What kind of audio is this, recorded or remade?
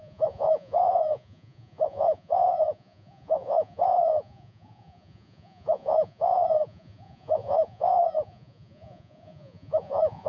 remade